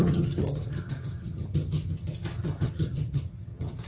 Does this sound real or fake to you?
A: fake